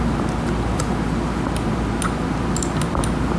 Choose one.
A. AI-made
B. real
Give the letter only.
B